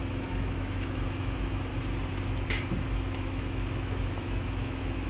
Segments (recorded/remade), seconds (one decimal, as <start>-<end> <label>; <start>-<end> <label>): 0.0-1.7 remade; 1.7-2.8 recorded; 2.8-5.1 remade